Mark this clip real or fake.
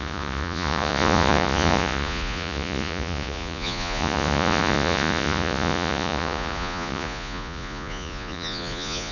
fake